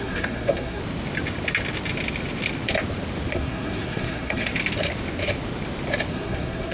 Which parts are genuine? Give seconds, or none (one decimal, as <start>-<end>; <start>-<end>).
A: 0.8-3.3; 4.5-6.1